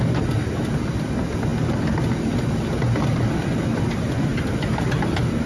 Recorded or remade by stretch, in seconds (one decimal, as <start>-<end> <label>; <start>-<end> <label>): 0.0-5.5 recorded